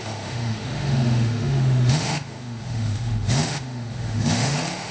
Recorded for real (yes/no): no